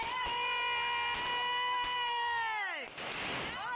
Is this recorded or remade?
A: recorded